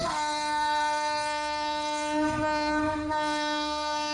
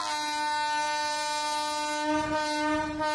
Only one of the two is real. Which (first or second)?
second